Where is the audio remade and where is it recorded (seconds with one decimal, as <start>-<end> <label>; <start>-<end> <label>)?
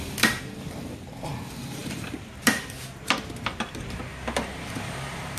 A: 0.0-1.8 recorded; 1.8-2.8 remade; 2.8-5.4 recorded